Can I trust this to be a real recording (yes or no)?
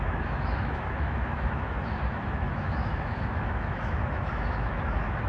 no